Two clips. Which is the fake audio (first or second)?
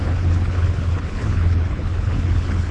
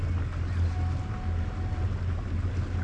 first